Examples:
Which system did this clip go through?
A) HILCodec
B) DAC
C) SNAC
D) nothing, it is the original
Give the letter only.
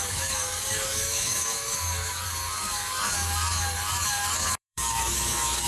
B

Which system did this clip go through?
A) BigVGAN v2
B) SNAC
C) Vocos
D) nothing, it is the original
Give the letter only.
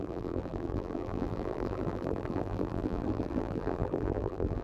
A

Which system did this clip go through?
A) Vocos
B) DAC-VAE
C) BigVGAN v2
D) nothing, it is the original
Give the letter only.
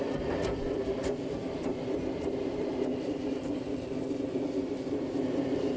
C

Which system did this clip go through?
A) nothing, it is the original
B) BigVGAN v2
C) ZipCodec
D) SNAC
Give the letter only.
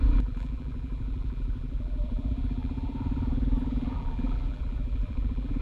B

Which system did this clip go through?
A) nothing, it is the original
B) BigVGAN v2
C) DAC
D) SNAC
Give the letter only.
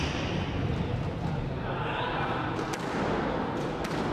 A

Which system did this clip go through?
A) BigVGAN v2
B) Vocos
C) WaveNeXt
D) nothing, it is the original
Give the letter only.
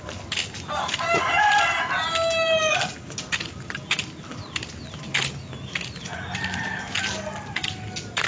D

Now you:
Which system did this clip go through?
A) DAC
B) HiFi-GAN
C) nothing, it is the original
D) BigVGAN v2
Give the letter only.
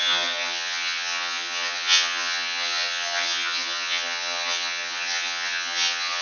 B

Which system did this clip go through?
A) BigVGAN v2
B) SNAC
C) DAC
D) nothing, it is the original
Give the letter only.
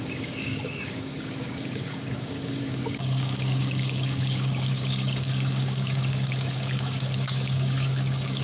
C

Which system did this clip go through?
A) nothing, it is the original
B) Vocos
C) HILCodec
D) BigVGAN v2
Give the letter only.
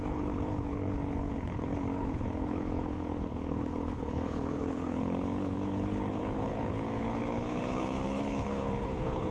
C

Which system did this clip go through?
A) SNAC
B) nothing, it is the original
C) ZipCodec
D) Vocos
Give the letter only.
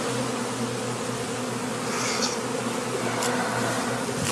B